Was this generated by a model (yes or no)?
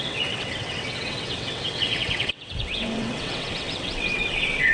yes